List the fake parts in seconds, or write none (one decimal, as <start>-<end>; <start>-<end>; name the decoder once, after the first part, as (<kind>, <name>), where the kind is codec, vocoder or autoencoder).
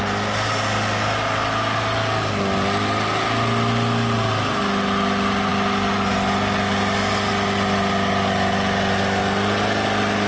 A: none